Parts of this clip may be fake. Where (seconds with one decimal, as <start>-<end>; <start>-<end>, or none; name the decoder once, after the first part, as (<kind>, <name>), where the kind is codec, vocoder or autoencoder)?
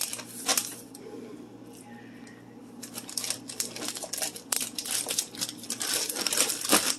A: none